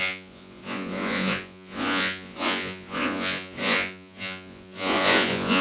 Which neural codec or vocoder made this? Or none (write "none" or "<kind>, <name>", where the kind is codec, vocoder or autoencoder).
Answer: vocoder, Vocos